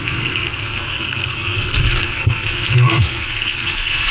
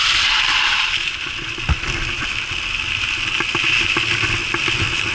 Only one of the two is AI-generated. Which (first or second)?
first